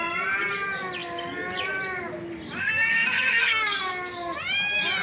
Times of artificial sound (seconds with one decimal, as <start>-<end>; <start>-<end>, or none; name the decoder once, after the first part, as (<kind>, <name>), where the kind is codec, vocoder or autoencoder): 2.6-3.9 (codec, SNAC)